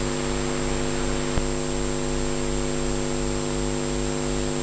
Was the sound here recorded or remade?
recorded